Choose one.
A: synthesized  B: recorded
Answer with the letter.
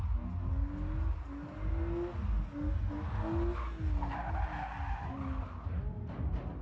B